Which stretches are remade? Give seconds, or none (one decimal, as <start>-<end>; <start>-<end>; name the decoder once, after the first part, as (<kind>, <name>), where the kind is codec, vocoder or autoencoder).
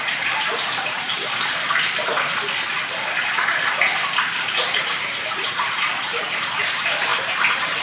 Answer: 0.0-2.1 (vocoder, BigVGAN v2); 4.2-7.8